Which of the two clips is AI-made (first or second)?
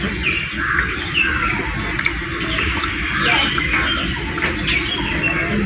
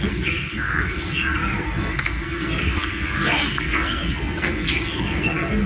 second